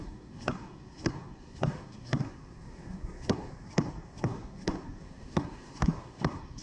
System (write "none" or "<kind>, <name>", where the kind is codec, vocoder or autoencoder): codec, SNAC